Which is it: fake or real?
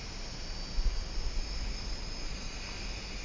real